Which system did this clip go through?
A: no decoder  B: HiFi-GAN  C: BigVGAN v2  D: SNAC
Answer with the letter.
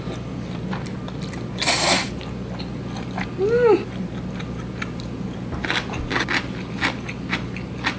A